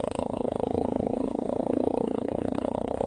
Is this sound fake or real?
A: fake